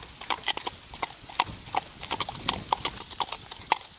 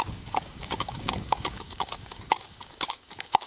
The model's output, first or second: second